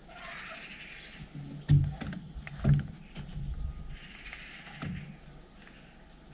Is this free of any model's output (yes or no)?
yes